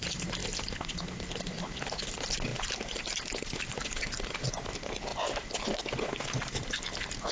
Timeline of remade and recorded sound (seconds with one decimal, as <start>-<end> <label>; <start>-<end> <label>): 0.0-7.3 recorded

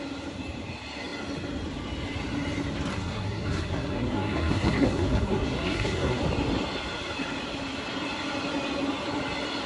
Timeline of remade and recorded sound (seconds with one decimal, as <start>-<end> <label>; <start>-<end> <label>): 0.0-2.9 recorded; 2.9-6.2 remade; 6.2-9.7 recorded

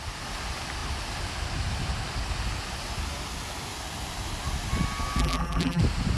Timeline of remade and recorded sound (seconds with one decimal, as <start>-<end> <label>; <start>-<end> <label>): 0.0-5.2 recorded; 5.2-5.8 remade; 5.8-6.2 recorded

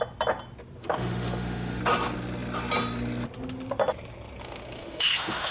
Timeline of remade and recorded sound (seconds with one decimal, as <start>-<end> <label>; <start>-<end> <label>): 0.0-0.8 recorded; 0.8-1.8 remade; 1.8-4.4 recorded; 4.4-5.5 remade

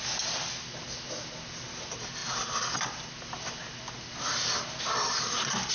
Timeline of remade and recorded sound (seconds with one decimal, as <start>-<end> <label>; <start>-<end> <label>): 0.0-5.7 recorded